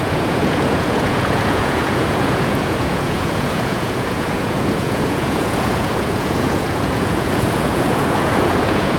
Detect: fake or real fake